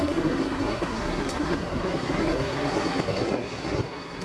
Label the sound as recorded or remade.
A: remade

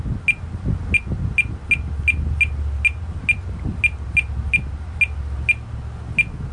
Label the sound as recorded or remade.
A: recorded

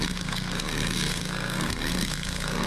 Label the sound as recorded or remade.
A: remade